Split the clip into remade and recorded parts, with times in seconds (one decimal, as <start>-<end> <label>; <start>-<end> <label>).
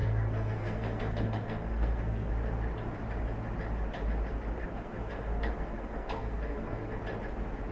0.0-2.3 remade; 2.3-4.6 recorded; 4.6-7.0 remade; 7.0-7.7 recorded